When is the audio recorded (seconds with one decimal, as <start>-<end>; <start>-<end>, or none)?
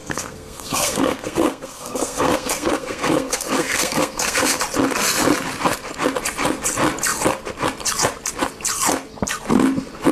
4.6-10.1